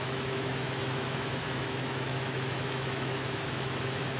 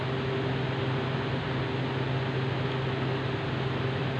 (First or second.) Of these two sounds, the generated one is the first